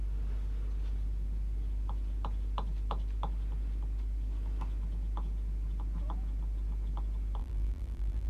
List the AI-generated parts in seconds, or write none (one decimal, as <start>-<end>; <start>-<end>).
7.4-8.3